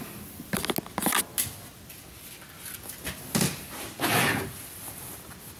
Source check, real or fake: real